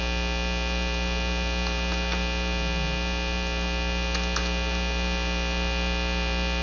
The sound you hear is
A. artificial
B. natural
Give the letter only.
B